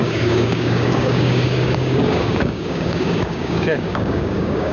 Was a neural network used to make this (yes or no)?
yes